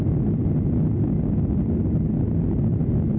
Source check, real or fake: real